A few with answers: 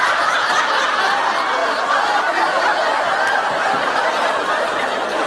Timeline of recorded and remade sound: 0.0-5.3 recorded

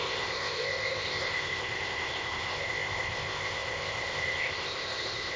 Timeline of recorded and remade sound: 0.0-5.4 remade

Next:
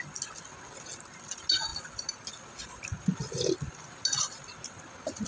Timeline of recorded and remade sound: 0.0-5.3 recorded

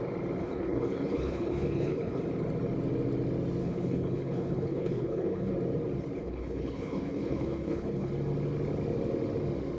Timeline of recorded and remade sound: 0.0-0.4 recorded; 0.4-2.2 remade; 2.2-3.6 recorded; 3.6-5.5 remade; 5.5-6.2 recorded; 6.2-8.1 remade; 8.1-9.8 recorded

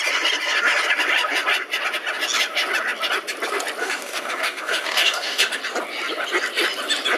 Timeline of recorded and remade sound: 0.0-3.8 recorded; 3.8-5.6 remade; 5.6-7.2 recorded